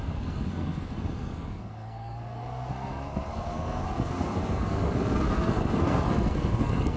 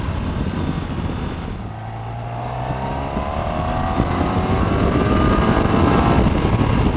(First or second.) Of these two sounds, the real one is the second